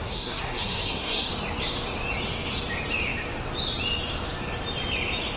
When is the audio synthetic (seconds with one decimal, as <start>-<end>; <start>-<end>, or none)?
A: 0.0-1.3